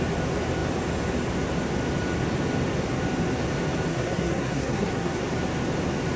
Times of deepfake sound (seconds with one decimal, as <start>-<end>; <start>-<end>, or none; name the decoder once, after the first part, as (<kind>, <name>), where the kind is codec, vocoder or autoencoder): 3.9-5.2 (codec, SNAC)